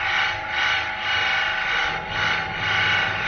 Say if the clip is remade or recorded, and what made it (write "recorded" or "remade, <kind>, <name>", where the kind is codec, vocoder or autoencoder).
recorded